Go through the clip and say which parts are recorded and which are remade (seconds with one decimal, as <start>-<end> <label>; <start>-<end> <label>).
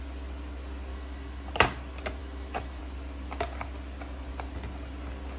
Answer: 0.0-0.9 recorded; 0.9-1.5 remade; 1.5-2.2 recorded; 2.2-2.8 remade; 2.8-5.4 recorded